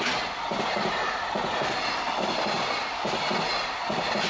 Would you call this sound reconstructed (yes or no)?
no